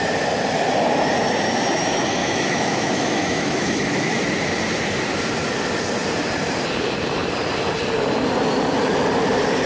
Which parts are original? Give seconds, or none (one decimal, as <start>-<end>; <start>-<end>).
0.0-2.2; 4.2-9.7